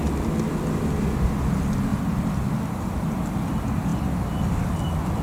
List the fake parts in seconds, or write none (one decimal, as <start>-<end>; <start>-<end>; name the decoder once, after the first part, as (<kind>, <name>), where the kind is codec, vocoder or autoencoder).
none